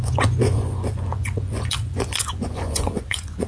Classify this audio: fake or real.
fake